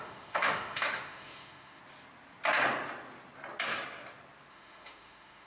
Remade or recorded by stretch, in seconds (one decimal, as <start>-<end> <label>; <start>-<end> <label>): 0.0-1.8 remade; 1.8-4.5 recorded; 4.5-5.5 remade